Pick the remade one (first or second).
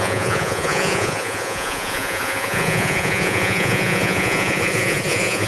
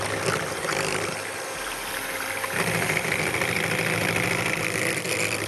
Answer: first